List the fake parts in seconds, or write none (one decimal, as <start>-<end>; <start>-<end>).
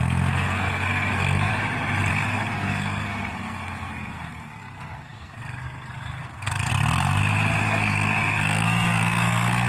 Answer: 0.0-1.5; 2.1-6.7; 7.6-9.7